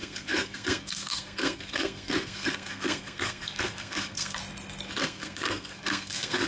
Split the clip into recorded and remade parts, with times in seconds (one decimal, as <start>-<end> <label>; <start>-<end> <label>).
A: 0.0-4.4 remade; 4.4-5.0 recorded; 5.0-6.5 remade